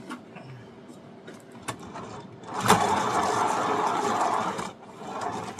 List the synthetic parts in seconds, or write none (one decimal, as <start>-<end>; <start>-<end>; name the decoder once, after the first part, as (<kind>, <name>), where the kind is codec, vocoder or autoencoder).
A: none